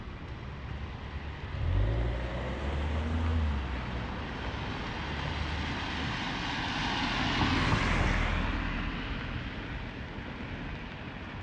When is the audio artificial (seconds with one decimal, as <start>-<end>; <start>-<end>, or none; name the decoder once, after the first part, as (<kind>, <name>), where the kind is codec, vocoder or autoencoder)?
none